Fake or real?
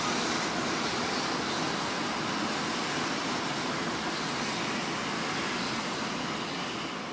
real